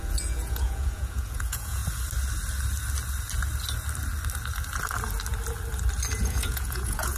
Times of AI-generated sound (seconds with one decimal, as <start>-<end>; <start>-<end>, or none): 0.0-1.8; 6.1-7.2